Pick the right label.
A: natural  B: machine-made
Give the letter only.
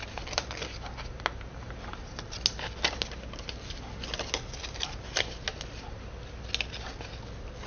A